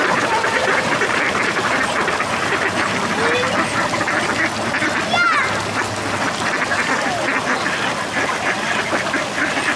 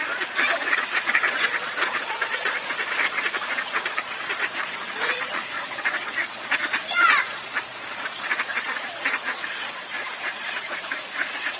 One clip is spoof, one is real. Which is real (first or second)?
first